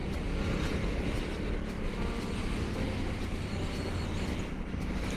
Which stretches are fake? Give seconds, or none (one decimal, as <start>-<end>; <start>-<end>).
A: 3.1-4.3